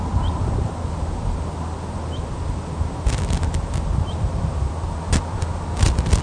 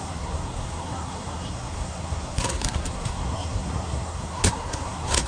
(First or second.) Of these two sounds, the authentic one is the first